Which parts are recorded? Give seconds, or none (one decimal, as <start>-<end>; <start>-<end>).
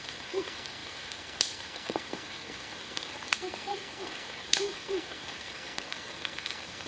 none